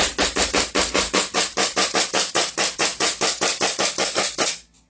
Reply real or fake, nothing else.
real